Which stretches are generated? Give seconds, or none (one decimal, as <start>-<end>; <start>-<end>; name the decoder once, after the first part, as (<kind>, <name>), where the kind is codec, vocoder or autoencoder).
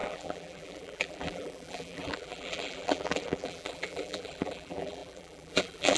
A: 0.0-6.0 (vocoder, BigVGAN v2)